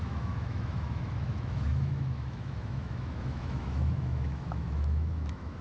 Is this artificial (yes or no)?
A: yes